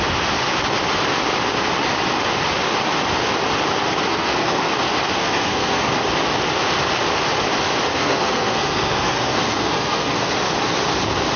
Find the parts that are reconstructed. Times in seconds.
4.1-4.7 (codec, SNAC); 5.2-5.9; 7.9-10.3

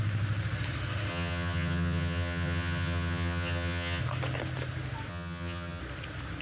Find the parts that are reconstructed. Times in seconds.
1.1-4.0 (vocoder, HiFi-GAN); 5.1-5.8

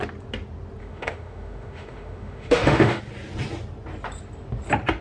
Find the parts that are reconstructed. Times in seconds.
0.8-3.0 (autoencoder, DAC-VAE)

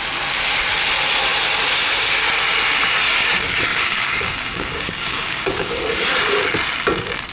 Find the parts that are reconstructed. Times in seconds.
3.7-5.7 (codec, DAC)

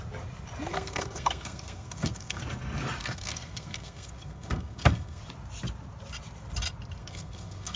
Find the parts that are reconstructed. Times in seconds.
0.7-2.4 (codec, SNAC); 3.0-5.2; 7.0-7.8